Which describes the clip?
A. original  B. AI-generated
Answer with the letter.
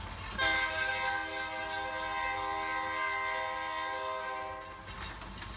A